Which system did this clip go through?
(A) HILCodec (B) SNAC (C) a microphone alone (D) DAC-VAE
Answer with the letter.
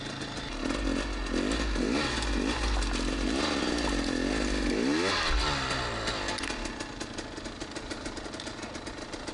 C